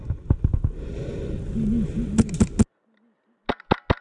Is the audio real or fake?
real